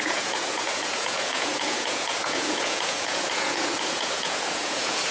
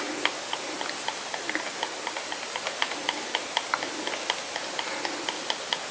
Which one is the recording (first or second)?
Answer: second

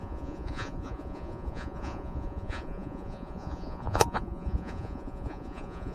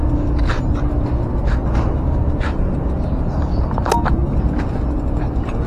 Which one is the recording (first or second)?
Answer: second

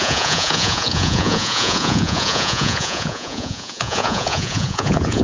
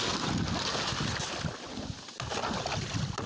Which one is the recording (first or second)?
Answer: second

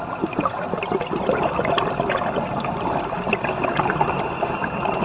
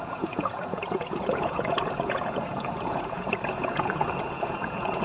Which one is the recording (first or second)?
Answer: first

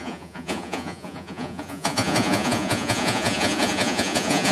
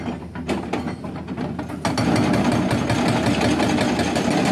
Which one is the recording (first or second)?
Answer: second